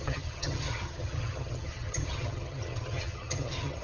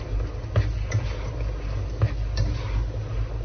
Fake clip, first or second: first